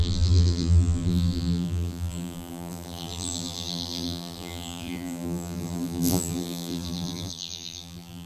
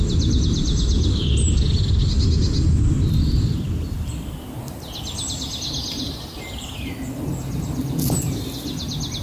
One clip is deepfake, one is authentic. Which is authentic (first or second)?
second